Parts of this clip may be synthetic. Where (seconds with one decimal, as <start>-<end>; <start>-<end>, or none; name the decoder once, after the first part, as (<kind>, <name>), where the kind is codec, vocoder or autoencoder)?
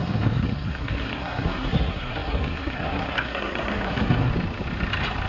0.0-4.3 (codec, SNAC)